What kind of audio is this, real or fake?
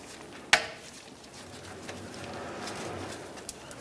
real